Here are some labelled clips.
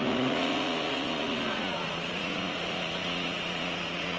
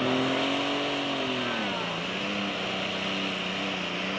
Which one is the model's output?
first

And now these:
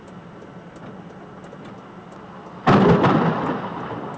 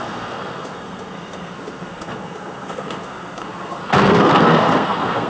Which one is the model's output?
second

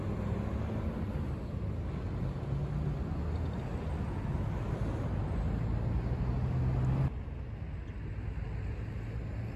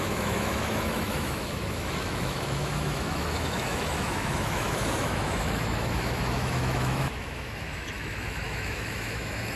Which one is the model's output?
second